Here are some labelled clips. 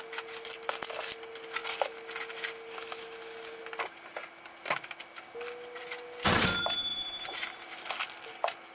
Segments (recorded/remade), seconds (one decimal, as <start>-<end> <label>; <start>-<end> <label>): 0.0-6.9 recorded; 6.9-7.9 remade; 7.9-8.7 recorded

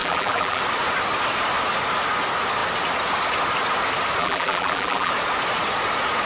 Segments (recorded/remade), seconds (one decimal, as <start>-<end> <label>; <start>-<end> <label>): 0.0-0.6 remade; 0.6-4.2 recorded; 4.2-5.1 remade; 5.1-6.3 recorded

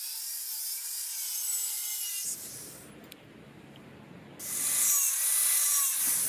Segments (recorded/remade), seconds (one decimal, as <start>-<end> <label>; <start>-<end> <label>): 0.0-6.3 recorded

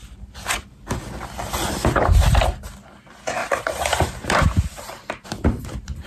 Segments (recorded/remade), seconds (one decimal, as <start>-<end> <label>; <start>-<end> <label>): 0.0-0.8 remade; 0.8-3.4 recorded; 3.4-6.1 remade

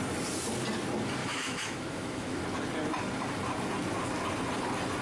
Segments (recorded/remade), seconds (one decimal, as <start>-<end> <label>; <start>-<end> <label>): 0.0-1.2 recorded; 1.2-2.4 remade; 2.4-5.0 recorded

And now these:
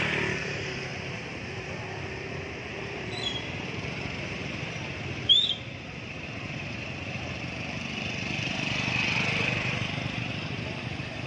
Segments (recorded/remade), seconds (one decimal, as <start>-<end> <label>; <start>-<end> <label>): 0.0-0.9 remade; 0.9-2.7 recorded; 2.7-11.3 remade